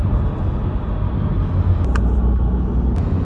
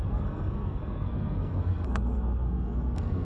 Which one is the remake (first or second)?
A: second